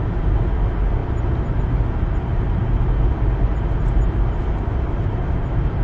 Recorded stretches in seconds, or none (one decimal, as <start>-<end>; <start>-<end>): 0.0-5.8